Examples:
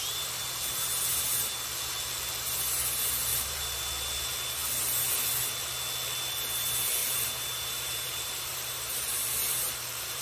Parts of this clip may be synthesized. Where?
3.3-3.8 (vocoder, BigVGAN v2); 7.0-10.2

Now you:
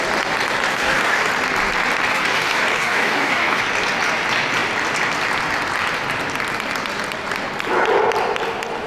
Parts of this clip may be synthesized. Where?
0.7-1.3 (codec, DAC); 2.1-3.6

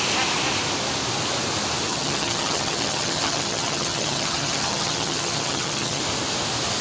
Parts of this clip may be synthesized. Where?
1.9-6.0 (vocoder, HiFi-GAN)

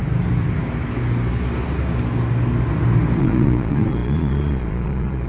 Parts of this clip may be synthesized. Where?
3.2-5.3 (vocoder, Vocos)

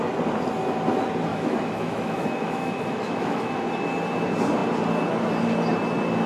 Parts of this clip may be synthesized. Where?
1.3-3.5 (autoencoder, DAC-VAE)

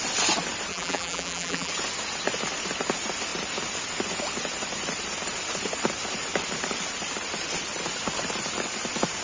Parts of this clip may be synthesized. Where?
0.7-1.7 (vocoder, BigVGAN v2)

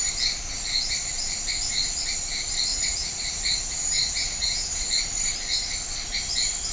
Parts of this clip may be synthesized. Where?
2.7-4.9 (vocoder, Vocos)